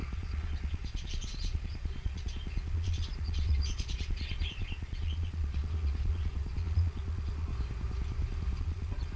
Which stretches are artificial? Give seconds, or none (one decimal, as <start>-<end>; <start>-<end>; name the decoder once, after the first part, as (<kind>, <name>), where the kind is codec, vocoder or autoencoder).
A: 0.0-7.5 (vocoder, Vocos); 8.6-9.2